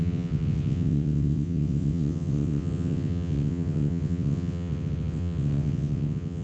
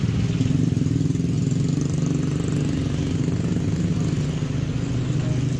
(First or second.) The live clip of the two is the second